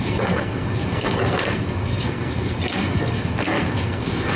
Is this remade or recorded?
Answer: remade